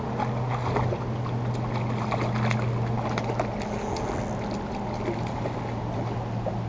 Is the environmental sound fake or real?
real